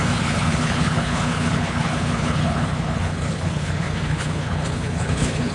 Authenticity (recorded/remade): remade